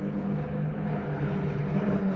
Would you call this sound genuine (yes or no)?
no